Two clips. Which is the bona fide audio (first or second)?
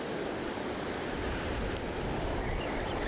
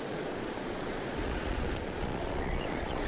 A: first